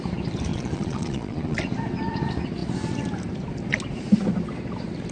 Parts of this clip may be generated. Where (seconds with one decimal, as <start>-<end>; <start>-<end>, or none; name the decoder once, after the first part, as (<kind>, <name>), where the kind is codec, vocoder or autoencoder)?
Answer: 0.5-1.6 (vocoder, Vocos)